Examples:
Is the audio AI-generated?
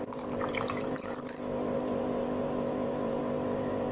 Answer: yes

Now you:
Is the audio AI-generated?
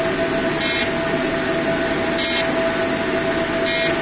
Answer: no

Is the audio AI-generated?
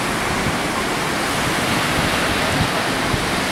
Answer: no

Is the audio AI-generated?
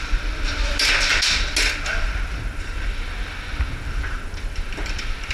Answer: no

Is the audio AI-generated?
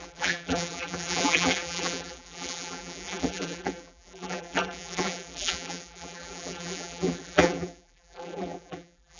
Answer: yes